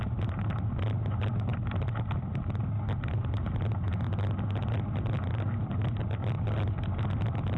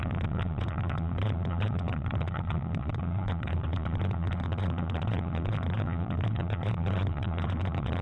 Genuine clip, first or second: first